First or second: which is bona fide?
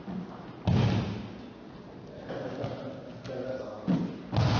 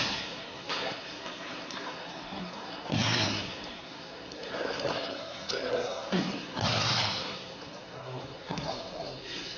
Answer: first